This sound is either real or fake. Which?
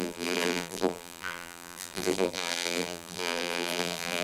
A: fake